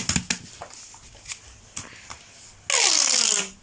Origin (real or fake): real